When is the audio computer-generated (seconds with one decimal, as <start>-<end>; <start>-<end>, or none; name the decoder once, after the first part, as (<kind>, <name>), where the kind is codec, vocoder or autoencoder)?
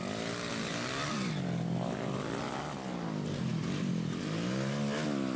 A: 0.5-1.3 (vocoder, BigVGAN v2); 3.5-4.2